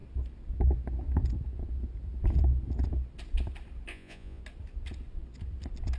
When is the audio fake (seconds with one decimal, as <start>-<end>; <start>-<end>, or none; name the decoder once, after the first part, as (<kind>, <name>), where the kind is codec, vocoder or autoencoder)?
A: 3.9-4.4 (vocoder, Vocos)